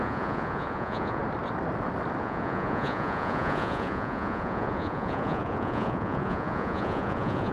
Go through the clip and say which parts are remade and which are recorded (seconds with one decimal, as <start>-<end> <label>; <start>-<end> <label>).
0.0-1.2 remade; 1.2-2.2 recorded; 2.2-7.5 remade